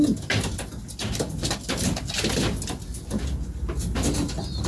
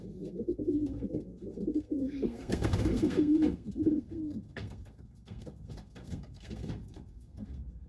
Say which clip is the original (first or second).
first